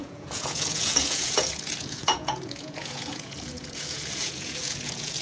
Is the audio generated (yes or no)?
yes